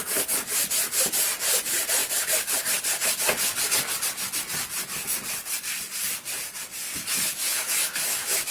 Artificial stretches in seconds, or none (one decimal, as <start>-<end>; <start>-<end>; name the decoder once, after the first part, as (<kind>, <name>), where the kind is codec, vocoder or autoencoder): 7.1-8.5 (autoencoder, DAC-VAE)